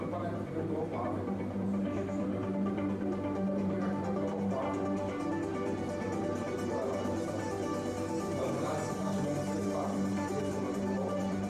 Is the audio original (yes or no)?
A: no